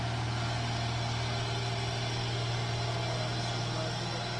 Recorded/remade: recorded